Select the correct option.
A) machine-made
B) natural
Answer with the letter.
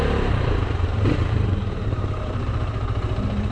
A